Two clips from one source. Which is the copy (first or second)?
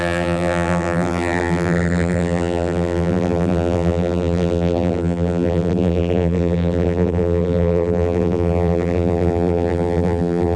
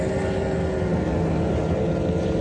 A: first